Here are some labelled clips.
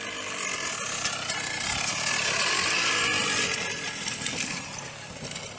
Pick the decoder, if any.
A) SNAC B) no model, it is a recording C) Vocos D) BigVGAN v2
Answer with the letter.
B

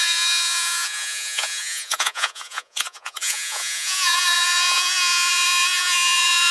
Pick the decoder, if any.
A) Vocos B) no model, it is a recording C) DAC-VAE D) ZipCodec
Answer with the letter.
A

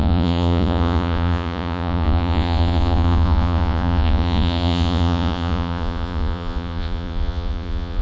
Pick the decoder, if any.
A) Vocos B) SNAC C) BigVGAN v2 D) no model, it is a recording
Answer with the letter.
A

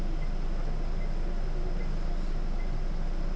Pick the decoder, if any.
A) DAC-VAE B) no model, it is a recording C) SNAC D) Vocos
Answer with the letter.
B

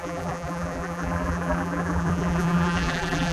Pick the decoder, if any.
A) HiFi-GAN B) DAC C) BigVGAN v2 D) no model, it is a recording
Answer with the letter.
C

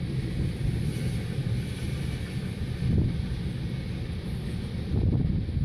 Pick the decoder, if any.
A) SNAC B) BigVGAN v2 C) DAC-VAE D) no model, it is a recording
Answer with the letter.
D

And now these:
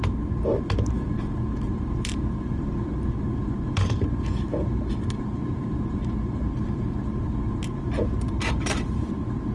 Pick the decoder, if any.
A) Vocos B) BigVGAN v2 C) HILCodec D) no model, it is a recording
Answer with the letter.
B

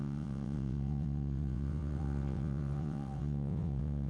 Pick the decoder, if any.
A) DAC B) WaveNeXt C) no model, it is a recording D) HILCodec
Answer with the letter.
B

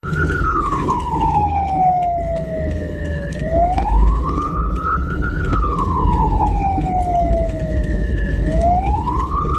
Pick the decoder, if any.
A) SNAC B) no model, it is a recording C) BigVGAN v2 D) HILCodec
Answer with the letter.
D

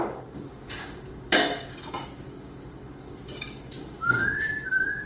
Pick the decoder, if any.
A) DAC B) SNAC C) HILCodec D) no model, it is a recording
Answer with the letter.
A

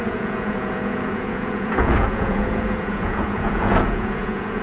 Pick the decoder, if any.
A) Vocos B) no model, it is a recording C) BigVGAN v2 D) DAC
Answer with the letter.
A